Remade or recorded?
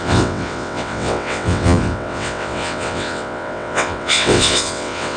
remade